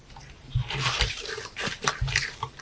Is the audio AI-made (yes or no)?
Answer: yes